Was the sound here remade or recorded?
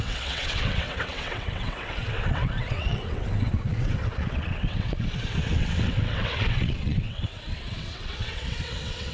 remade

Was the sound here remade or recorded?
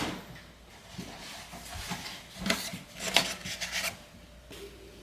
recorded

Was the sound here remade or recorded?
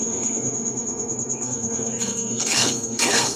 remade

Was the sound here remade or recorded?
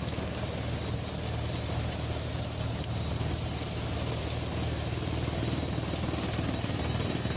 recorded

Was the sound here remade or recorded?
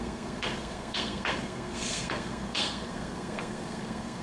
remade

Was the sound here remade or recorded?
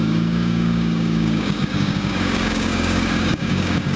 remade